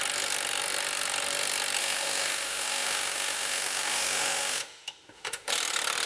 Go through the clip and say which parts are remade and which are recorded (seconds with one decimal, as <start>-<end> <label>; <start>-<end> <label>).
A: 0.0-1.8 recorded; 1.8-5.5 remade; 5.5-6.1 recorded